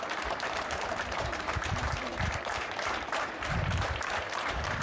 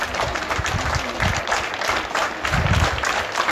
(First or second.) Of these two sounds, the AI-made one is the first